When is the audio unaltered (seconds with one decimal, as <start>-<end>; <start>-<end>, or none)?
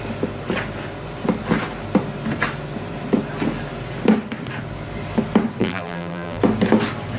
0.0-5.6; 6.4-7.2